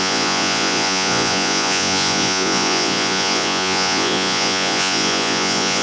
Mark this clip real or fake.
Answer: fake